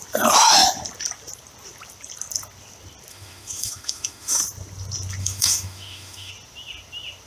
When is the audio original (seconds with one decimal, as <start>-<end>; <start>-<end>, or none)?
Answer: 0.0-3.1; 4.4-5.2; 6.3-7.3